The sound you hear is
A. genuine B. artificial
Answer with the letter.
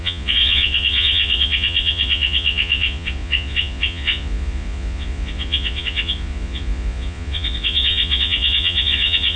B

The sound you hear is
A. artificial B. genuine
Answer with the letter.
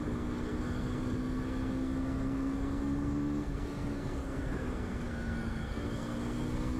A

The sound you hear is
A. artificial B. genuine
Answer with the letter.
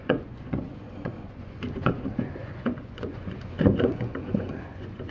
A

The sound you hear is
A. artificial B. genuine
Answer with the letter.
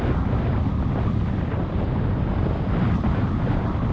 B